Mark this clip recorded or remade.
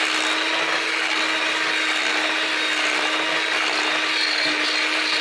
recorded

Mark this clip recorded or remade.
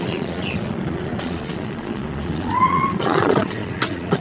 remade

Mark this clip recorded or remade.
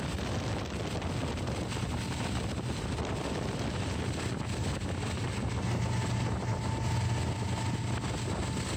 recorded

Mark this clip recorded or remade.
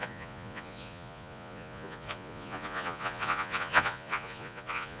remade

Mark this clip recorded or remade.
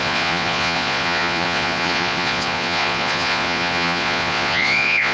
remade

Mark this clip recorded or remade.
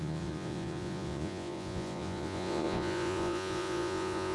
remade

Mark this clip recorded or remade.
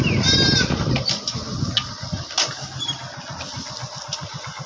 recorded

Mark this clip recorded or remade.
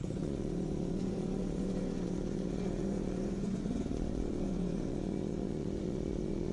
remade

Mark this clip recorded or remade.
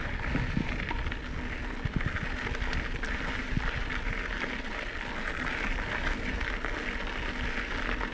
recorded